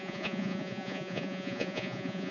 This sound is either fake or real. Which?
fake